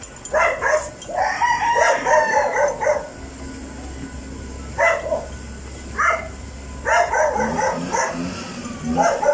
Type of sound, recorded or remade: recorded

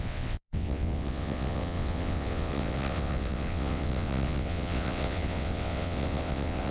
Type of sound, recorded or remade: remade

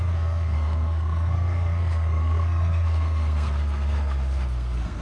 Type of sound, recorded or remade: remade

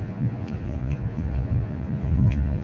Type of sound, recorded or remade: remade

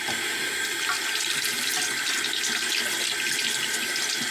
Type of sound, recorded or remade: recorded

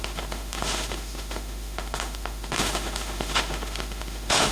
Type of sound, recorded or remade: remade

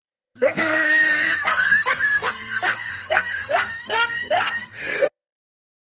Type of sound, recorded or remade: remade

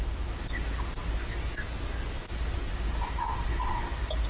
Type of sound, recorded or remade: recorded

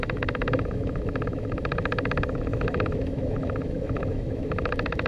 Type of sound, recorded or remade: remade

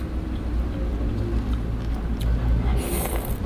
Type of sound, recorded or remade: recorded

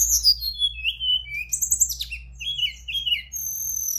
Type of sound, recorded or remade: recorded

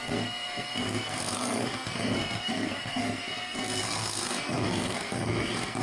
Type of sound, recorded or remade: remade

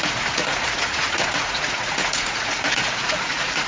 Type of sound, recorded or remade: remade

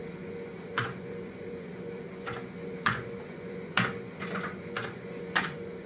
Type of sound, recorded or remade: remade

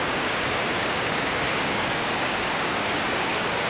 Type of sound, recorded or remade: remade